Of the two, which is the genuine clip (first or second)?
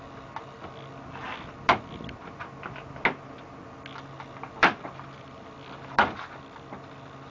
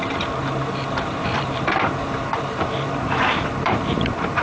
first